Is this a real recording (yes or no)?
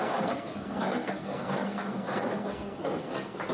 no